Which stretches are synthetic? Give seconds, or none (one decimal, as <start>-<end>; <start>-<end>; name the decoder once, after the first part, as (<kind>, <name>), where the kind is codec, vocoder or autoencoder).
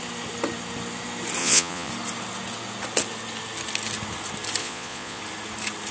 1.4-1.9 (vocoder, Vocos); 4.6-5.2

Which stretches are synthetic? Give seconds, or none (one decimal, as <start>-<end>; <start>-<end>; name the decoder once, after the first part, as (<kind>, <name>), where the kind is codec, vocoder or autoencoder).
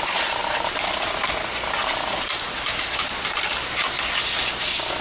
0.4-3.4 (vocoder, BigVGAN v2)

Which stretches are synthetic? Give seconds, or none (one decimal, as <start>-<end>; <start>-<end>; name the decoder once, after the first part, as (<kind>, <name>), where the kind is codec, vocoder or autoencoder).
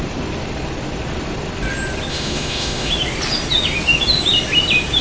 2.1-2.9 (autoencoder, DAC-VAE)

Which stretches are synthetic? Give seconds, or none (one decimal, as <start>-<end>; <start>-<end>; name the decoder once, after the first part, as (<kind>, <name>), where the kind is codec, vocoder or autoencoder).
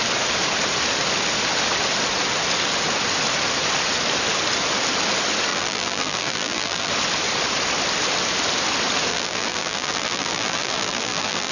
5.5-6.9 (vocoder, BigVGAN v2); 9.1-11.5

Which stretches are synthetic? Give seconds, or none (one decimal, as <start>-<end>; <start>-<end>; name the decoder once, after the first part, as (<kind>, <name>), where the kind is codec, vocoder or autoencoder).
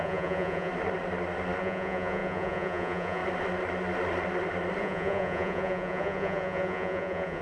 0.0-0.7 (vocoder, Vocos); 1.6-3.2; 4.8-7.4